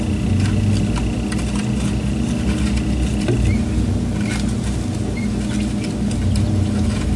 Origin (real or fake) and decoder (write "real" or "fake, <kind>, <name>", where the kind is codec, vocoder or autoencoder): real